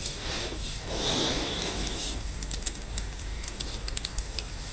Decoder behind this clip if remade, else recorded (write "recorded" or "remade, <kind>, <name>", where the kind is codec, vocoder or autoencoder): remade, codec, DAC